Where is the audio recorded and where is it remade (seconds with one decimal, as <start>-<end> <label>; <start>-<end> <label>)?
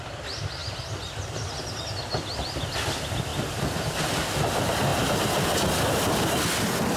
0.0-7.0 recorded